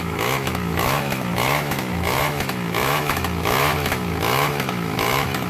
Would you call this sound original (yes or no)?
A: no